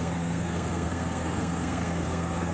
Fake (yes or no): yes